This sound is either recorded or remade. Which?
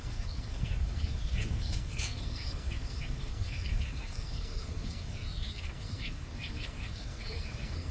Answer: remade